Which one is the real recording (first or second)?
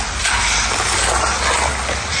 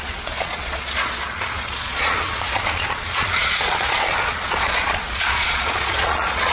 first